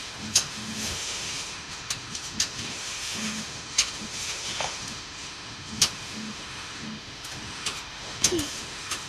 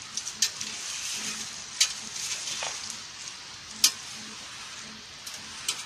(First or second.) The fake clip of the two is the first